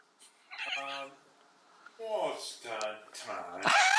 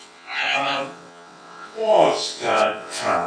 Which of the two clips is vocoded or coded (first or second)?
second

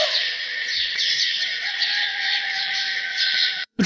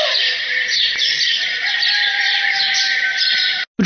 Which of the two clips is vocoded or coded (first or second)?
first